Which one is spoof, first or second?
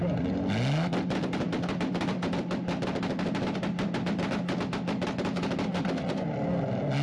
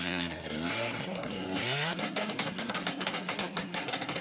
second